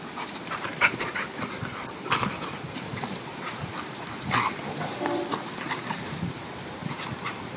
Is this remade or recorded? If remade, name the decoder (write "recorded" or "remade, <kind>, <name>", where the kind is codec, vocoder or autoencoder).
remade, vocoder, BigVGAN v2